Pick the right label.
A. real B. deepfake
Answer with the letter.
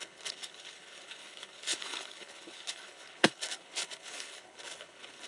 B